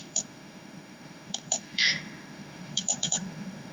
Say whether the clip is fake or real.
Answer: fake